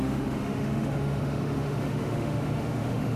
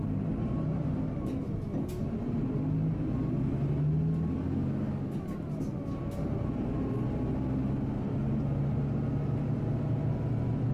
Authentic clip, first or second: second